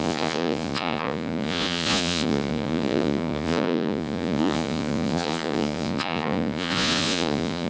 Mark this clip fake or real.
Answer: fake